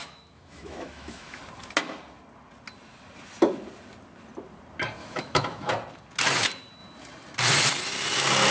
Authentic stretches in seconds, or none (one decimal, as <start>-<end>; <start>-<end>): 1.4-5.0; 5.7-8.5